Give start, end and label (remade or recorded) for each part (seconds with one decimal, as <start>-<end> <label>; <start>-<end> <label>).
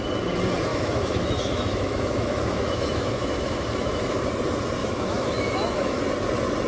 0.0-0.7 recorded; 0.7-4.3 remade; 4.3-4.8 recorded; 4.8-6.0 remade; 6.0-6.7 recorded